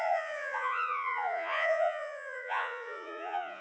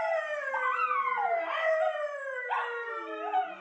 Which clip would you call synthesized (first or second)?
first